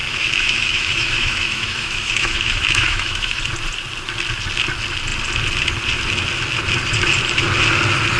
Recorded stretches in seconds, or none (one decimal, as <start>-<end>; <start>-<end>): 3.4-8.2